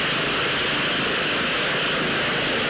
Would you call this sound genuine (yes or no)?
yes